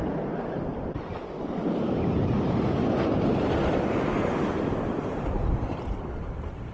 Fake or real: real